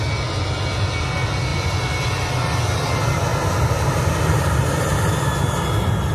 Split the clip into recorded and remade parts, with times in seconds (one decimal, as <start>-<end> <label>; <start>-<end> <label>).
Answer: 0.0-1.5 recorded; 1.5-2.3 remade; 2.3-3.3 recorded; 3.3-5.1 remade; 5.1-6.1 recorded